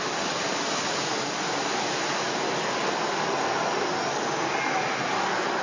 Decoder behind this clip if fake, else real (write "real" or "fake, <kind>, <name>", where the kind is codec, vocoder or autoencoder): real